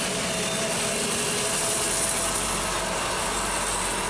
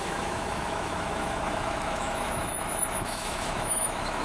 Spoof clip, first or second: second